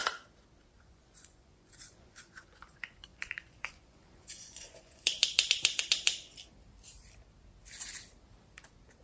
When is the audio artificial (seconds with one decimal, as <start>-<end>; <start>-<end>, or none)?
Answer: 0.8-6.3